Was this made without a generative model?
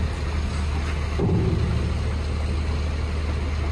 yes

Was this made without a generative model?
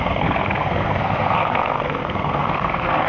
no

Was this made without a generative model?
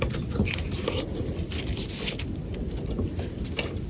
yes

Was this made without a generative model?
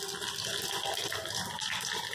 yes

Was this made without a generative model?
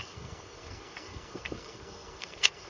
no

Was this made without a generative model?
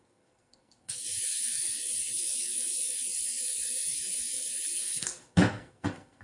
no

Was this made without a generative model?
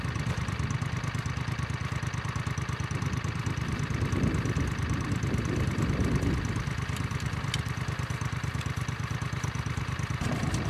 yes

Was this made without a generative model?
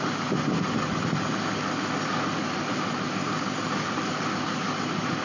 yes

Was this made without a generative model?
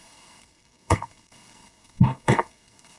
no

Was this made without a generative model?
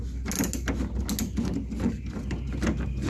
yes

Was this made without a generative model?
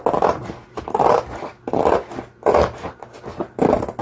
yes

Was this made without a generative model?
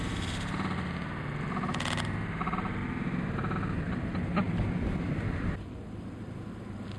yes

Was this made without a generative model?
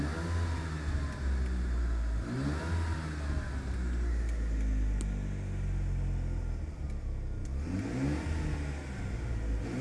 yes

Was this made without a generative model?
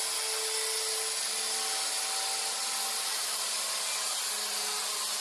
yes